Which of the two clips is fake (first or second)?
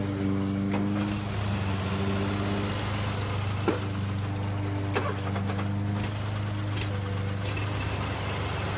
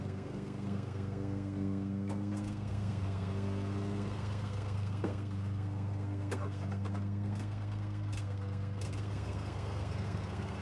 second